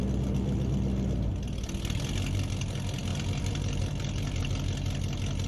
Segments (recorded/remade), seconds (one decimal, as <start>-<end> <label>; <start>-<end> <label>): 0.0-1.3 remade; 1.3-3.1 recorded; 3.1-4.5 remade; 4.5-5.5 recorded